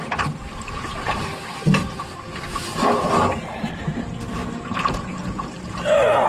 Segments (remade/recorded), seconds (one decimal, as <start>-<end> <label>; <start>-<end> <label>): 0.0-6.3 remade